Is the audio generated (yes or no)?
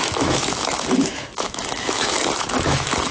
yes